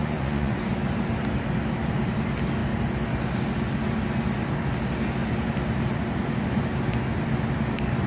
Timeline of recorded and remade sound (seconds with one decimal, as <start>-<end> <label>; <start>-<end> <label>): 0.0-0.6 remade; 0.6-8.1 recorded